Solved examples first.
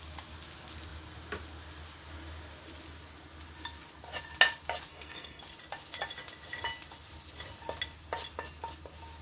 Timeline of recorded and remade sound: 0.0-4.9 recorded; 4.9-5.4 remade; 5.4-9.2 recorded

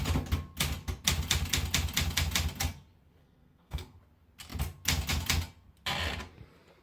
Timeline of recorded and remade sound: 0.0-3.2 recorded; 3.2-4.0 remade; 4.0-6.8 recorded

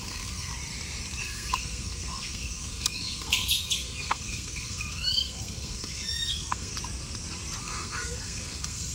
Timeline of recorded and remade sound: 0.0-0.5 remade; 0.5-1.2 recorded; 1.2-6.7 remade; 6.7-7.6 recorded; 7.6-8.9 remade